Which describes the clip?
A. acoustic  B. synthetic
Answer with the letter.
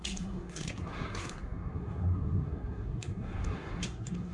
B